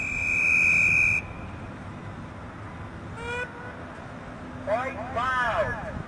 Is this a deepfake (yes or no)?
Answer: no